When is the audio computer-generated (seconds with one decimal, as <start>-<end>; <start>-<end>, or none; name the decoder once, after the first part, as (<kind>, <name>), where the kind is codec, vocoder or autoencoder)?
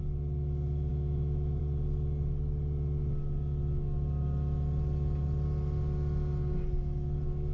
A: 0.9-1.6 (autoencoder, DAC-VAE)